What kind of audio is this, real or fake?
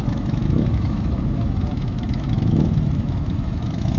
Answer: fake